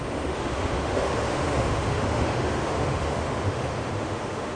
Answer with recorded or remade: remade